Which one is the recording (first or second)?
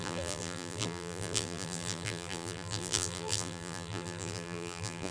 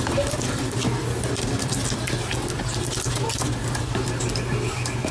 second